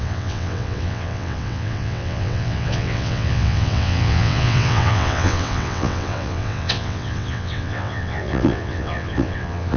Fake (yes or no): yes